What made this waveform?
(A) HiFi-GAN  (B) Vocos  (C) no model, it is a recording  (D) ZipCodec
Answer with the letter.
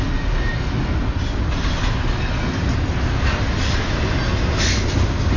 C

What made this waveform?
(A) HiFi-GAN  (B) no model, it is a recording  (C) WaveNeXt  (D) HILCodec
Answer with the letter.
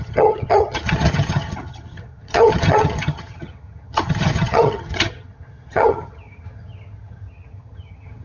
A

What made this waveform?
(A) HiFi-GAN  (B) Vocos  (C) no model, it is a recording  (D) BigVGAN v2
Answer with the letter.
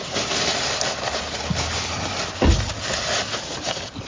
C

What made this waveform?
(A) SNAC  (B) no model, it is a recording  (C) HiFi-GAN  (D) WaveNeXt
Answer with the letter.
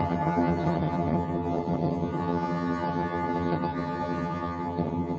C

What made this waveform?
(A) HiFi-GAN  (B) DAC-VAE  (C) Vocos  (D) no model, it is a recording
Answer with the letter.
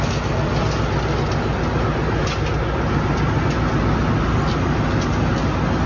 D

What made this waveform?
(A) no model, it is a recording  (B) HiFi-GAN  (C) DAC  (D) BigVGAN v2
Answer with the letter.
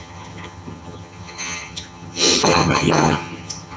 B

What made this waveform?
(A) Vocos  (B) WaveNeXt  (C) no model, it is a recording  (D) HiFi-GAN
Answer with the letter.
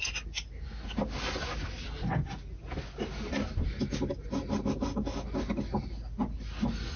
C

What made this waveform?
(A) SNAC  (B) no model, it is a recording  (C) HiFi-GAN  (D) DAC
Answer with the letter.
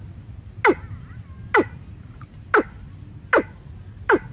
B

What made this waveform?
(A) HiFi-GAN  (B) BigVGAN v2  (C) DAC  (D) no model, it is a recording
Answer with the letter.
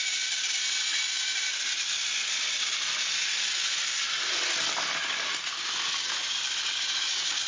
D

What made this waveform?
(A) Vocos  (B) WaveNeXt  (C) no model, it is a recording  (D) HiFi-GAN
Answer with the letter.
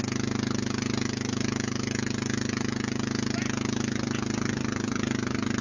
C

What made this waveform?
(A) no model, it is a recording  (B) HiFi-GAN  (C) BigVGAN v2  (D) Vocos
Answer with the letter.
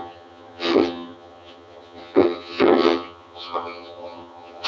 B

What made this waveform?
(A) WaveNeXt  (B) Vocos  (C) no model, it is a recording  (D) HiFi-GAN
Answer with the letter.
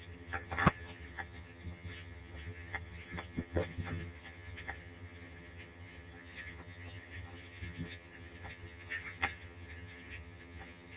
D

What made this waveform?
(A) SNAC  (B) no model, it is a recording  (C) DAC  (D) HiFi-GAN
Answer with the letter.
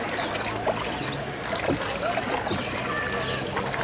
B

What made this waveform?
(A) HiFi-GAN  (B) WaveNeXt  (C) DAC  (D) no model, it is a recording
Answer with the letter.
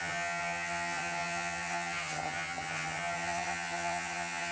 A